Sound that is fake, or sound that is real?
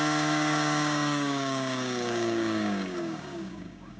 fake